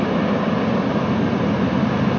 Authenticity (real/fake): real